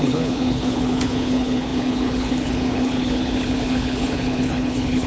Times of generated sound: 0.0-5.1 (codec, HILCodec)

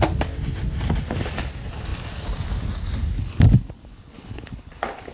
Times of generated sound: 3.9-5.1 (codec, HILCodec)